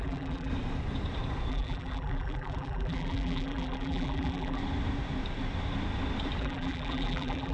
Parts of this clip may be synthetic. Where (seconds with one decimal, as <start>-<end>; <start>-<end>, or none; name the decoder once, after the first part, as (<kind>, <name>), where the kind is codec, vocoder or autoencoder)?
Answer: 0.0-0.5 (vocoder, BigVGAN v2); 1.5-4.6; 6.4-7.5